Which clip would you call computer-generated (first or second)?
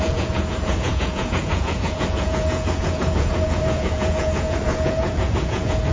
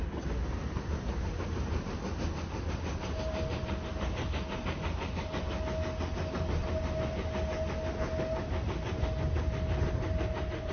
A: first